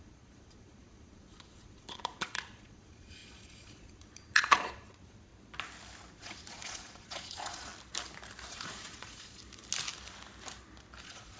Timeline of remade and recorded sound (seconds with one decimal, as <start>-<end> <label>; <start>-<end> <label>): 0.0-5.3 remade; 5.3-6.1 recorded; 6.1-7.7 remade; 7.7-8.5 recorded; 8.5-9.4 remade; 9.4-11.0 recorded; 11.0-11.4 remade